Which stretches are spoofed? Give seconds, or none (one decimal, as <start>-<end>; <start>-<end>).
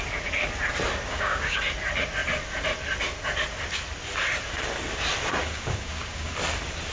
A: 1.1-1.6; 5.4-6.3